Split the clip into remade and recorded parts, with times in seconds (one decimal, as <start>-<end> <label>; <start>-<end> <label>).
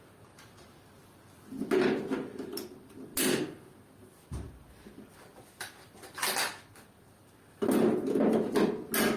0.0-9.2 recorded